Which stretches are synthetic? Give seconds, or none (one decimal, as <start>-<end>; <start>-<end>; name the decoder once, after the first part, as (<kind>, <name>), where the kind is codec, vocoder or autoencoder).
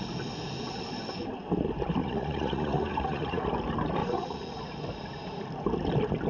2.0-3.4 (vocoder, Vocos); 4.0-4.6